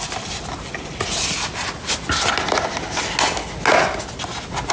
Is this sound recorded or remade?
recorded